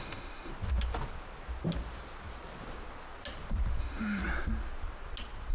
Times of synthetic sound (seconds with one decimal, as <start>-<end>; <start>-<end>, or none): 0.0-0.5; 3.8-4.2

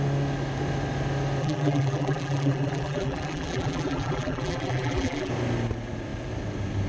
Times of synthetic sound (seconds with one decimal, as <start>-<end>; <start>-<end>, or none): 1.4-5.3

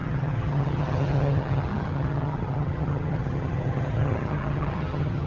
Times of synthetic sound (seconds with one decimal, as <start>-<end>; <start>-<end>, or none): 0.0-5.3

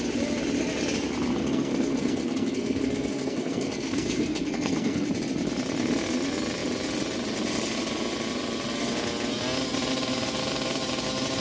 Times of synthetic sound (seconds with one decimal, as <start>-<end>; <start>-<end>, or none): 1.4-5.1

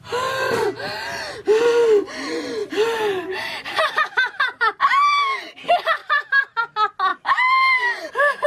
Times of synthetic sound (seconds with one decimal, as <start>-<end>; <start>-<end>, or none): 2.6-4.8; 6.0-6.6; 7.1-8.1

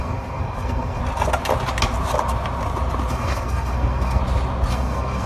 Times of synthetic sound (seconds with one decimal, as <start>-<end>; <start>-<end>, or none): 0.0-1.0; 3.1-4.2; 4.7-5.3

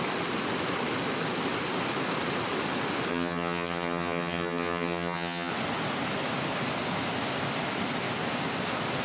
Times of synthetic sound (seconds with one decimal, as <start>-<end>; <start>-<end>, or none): 3.1-5.5